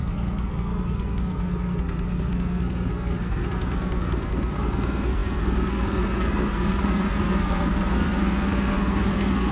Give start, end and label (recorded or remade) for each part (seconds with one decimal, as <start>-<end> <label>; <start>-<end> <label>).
0.0-9.5 remade